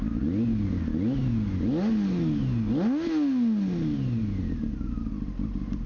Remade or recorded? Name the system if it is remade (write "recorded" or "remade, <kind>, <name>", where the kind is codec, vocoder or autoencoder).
recorded